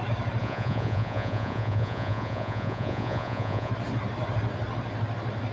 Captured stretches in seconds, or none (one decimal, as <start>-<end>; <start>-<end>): 0.0-0.4; 3.7-5.5